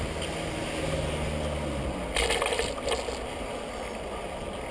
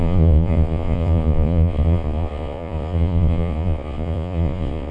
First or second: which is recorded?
first